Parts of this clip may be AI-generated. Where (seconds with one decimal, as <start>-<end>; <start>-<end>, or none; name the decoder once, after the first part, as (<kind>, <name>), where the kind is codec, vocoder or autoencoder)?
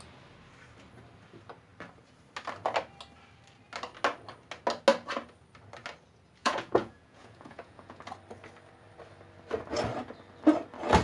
6.4-8.0 (vocoder, Vocos)